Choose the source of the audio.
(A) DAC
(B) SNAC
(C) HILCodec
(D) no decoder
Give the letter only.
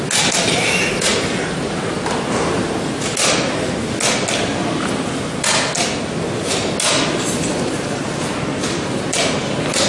D